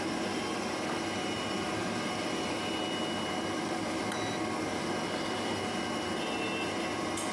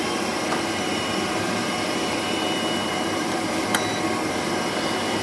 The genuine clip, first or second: first